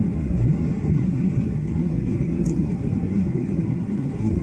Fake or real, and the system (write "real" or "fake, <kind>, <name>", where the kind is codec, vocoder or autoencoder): fake, codec, SNAC